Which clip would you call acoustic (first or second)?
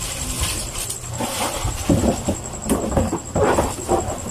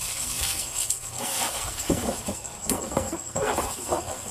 first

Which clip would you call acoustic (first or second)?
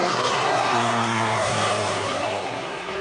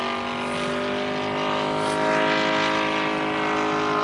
second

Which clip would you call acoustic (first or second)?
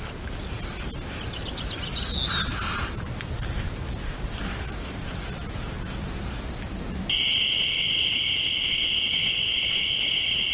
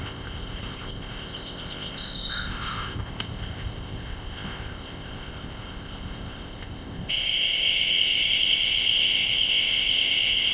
first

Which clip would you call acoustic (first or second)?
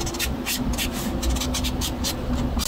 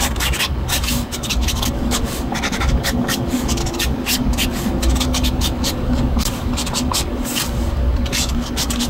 first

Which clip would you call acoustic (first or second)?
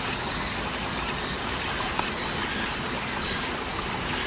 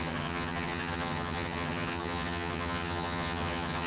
first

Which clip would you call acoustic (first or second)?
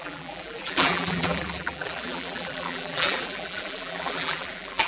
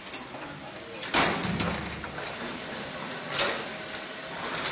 second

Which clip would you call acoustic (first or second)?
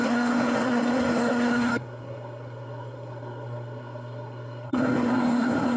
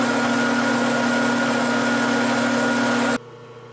second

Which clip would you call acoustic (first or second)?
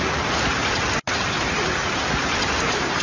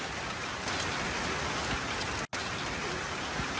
second